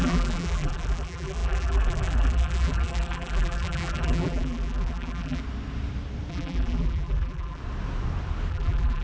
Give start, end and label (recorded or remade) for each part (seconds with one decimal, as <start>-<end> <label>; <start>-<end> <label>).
0.0-5.4 remade; 5.4-6.3 recorded; 6.3-7.6 remade; 7.6-8.5 recorded; 8.5-9.0 remade